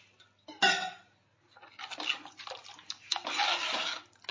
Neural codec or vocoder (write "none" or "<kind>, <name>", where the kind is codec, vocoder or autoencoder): none